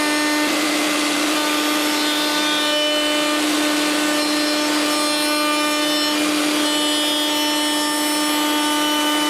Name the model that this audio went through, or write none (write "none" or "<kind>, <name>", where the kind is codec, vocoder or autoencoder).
none